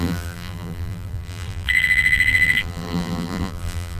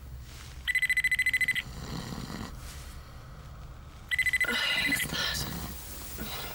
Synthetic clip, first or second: first